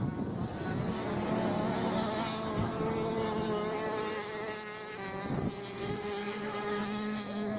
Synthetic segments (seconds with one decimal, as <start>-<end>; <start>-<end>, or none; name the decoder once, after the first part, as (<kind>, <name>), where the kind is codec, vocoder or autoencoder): 5.8-7.6 (autoencoder, DAC-VAE)